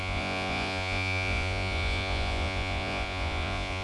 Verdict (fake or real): fake